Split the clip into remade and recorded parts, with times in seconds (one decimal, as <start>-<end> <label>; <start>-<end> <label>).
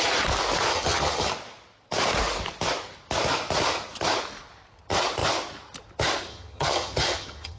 0.0-0.7 recorded; 0.7-1.3 remade; 1.3-6.3 recorded; 6.3-7.6 remade